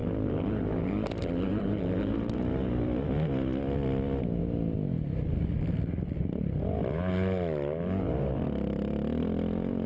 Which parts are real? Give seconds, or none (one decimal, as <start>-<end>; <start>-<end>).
1.6-9.9